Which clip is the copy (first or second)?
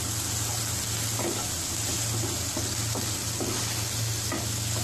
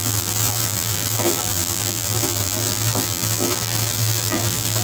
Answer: second